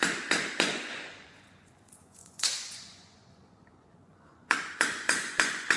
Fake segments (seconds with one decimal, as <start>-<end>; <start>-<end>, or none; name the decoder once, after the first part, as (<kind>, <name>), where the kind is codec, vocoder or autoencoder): 0.0-5.8 (vocoder, Vocos)